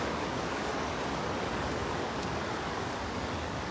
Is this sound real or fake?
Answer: fake